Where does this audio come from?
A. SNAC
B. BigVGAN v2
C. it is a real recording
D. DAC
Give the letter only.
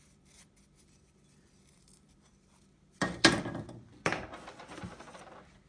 B